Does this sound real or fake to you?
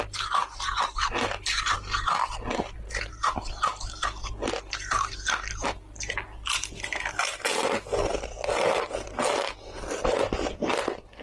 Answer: real